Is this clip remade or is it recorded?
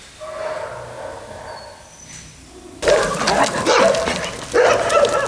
recorded